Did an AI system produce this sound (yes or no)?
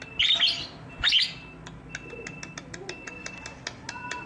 no